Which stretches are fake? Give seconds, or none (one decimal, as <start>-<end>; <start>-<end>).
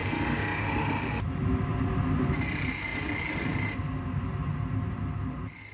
none